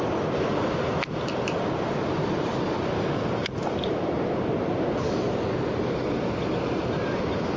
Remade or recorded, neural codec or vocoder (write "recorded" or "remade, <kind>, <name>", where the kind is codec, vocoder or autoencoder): recorded